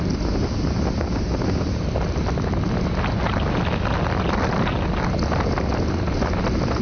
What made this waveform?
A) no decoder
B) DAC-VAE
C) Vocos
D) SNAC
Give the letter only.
A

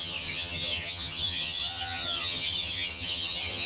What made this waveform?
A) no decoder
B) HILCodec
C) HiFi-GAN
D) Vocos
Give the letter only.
C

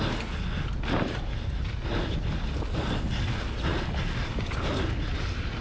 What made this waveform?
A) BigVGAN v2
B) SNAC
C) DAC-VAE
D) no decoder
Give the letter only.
D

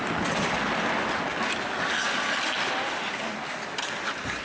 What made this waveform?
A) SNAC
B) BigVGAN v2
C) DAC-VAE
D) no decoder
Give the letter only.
D